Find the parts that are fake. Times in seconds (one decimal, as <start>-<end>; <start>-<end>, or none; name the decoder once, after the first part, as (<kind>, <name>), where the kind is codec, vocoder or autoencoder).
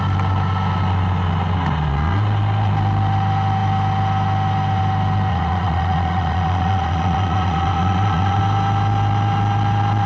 5.3-8.4 (vocoder, Vocos)